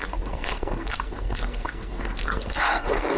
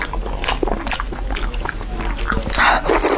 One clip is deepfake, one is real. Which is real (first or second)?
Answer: second